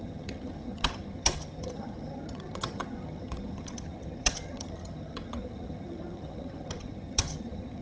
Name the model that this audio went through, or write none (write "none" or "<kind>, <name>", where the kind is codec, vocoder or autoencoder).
vocoder, HiFi-GAN